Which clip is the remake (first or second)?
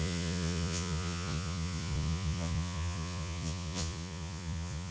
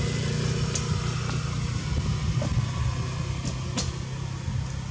first